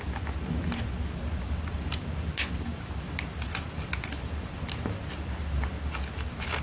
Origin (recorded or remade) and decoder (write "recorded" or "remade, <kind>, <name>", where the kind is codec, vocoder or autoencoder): recorded